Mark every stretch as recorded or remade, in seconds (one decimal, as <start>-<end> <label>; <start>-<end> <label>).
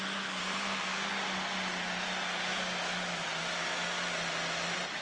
0.0-0.4 recorded; 0.4-1.1 remade; 1.1-5.0 recorded